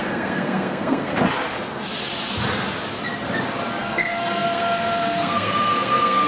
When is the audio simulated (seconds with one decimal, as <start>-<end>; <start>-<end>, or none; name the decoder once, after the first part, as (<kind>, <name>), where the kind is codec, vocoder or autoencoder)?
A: 0.0-1.1 (codec, SNAC); 3.8-6.3